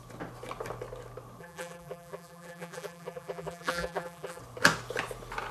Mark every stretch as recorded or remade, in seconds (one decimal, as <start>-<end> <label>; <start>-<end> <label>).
0.0-1.4 recorded; 1.4-4.4 remade; 4.4-5.5 recorded